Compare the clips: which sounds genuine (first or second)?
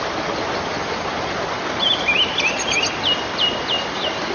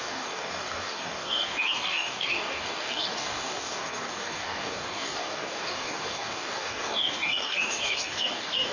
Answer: first